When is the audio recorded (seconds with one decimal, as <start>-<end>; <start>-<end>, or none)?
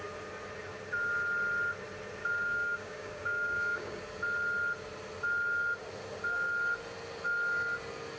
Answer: 0.0-2.2; 4.0-8.2